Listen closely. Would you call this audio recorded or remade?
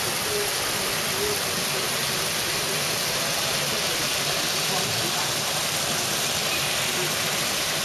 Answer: recorded